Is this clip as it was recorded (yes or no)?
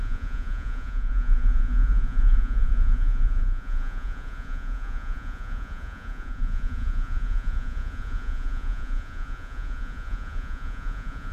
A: no